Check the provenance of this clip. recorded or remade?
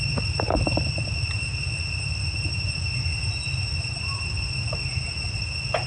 recorded